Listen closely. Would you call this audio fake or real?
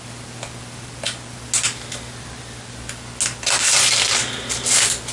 real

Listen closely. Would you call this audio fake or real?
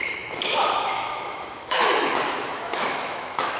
fake